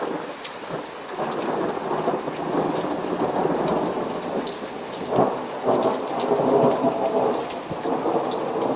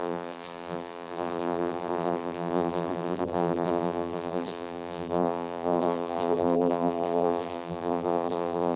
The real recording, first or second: first